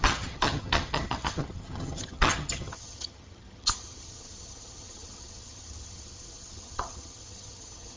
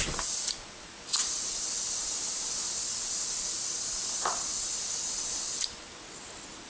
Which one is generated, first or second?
first